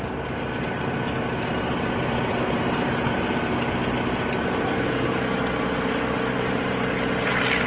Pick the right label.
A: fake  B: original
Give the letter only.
B